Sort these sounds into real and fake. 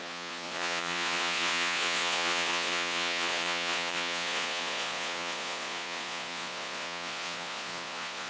fake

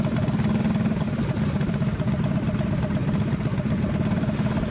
real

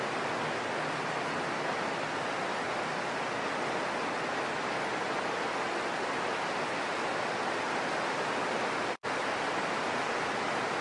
real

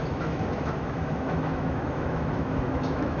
fake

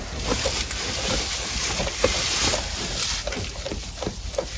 real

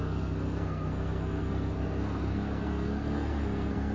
fake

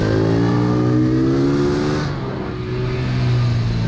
real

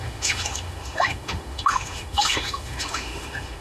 fake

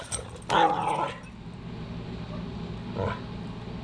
real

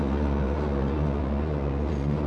fake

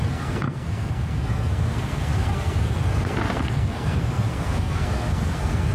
fake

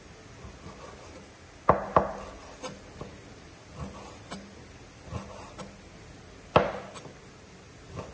real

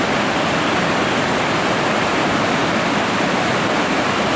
real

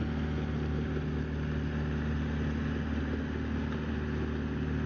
real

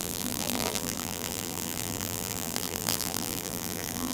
fake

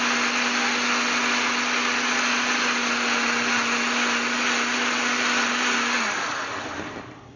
real